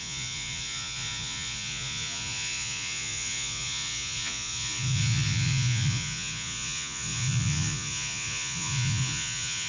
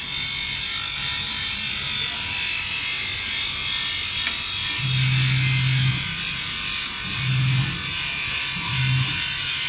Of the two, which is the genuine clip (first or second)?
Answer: second